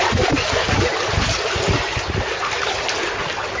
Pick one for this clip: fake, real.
real